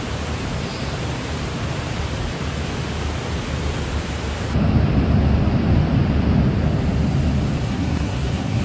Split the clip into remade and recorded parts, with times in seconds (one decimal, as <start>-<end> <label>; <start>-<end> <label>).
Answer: 0.0-7.6 recorded; 7.6-8.6 remade